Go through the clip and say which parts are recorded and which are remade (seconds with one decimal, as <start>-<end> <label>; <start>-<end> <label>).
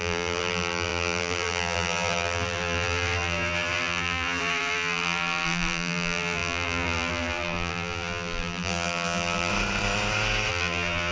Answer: 0.0-9.5 remade; 9.5-10.5 recorded; 10.5-11.1 remade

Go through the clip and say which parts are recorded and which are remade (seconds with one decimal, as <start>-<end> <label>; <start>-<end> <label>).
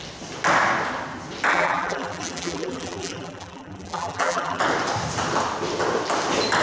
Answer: 0.0-1.5 recorded; 1.5-4.6 remade; 4.6-6.6 recorded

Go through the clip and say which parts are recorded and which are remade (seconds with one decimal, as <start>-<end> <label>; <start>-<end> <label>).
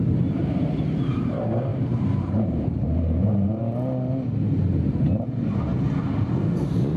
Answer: 0.0-3.6 remade; 3.6-4.9 recorded; 4.9-5.7 remade; 5.7-7.0 recorded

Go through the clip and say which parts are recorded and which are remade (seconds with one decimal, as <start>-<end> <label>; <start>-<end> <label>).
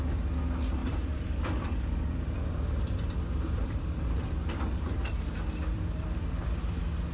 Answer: 0.0-0.8 recorded; 0.8-5.1 remade; 5.1-5.7 recorded; 5.7-6.6 remade; 6.6-7.1 recorded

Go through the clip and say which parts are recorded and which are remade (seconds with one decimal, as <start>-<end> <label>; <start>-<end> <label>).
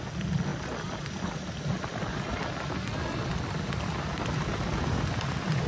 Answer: 0.0-0.5 recorded; 0.5-3.7 remade; 3.7-5.7 recorded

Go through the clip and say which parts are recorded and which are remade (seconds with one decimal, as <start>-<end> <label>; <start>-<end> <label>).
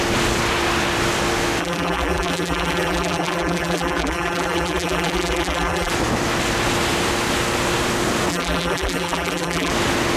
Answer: 0.0-1.6 recorded; 1.6-5.9 remade; 5.9-8.3 recorded; 8.3-9.7 remade; 9.7-10.2 recorded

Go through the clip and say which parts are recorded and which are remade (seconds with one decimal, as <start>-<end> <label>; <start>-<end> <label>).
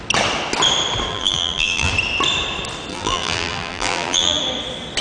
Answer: 0.0-1.1 recorded; 1.1-1.9 remade; 1.9-2.9 recorded; 2.9-4.4 remade; 4.4-5.0 recorded